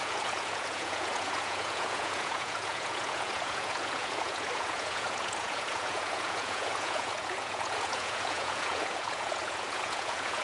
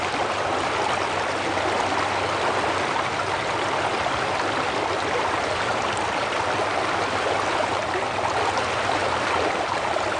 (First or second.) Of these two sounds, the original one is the second